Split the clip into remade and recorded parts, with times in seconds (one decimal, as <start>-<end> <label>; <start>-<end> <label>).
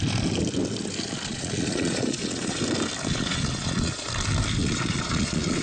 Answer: 0.0-1.3 recorded; 1.3-2.6 remade; 2.6-3.1 recorded; 3.1-4.1 remade; 4.1-4.6 recorded; 4.6-5.6 remade